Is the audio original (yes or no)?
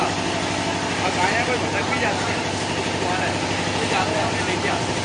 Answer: yes